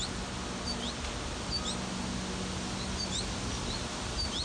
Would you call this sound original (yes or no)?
yes